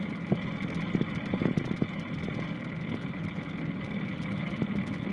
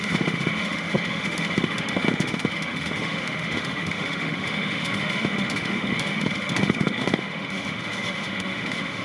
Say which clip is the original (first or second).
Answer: first